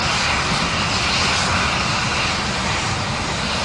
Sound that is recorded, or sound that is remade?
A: recorded